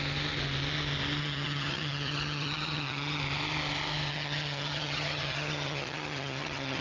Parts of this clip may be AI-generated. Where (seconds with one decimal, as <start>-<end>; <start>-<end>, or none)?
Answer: 1.2-3.2; 4.1-6.8